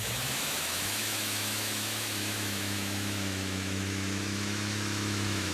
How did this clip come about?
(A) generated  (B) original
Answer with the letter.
A